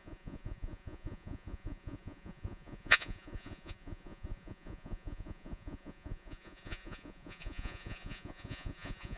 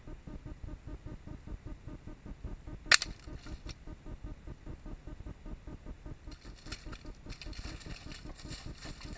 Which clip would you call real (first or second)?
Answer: second